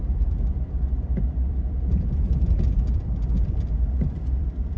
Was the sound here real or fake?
fake